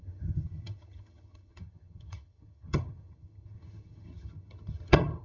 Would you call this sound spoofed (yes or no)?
yes